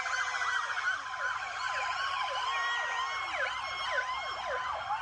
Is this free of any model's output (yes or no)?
yes